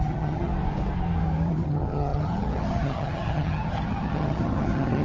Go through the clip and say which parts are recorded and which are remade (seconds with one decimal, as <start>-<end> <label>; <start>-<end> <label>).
0.0-0.5 remade; 0.5-1.5 recorded; 1.5-5.0 remade